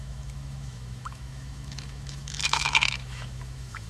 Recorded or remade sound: remade